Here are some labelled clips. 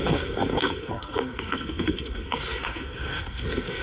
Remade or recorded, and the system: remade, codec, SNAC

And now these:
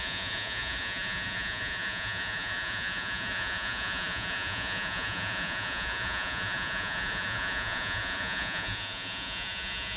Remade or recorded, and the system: remade, vocoder, Vocos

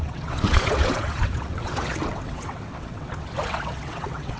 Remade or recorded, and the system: remade, vocoder, WaveNeXt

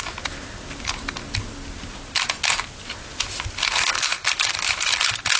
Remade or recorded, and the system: recorded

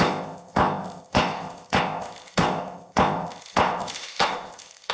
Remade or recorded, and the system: remade, codec, ZipCodec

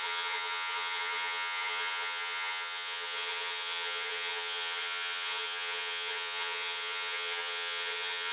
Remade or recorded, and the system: remade, vocoder, HiFi-GAN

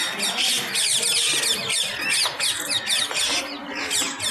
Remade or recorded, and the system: recorded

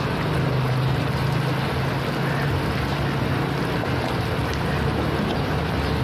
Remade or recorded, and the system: recorded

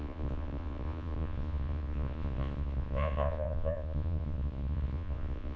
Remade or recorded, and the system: remade, vocoder, Vocos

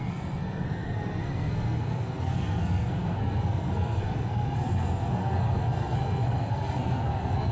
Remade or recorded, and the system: remade, codec, SNAC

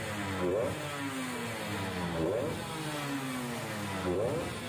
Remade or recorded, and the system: recorded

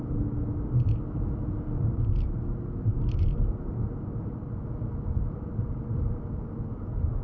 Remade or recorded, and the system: recorded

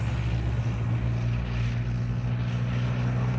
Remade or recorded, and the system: recorded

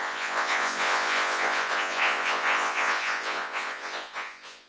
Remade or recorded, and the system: remade, vocoder, Vocos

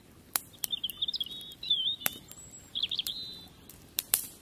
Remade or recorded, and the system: remade, vocoder, BigVGAN v2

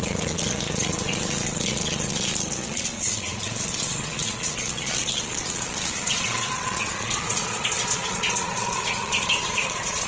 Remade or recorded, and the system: remade, vocoder, Vocos